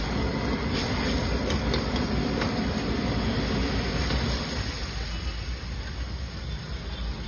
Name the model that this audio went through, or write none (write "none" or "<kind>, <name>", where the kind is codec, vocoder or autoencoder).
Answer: none